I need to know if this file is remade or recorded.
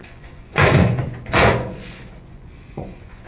remade